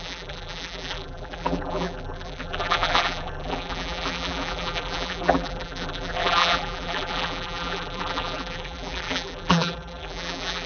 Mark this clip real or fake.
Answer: fake